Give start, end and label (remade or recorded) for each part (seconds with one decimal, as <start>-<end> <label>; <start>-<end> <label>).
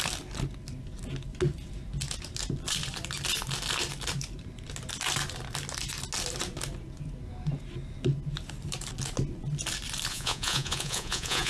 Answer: 0.0-10.1 recorded; 10.1-11.5 remade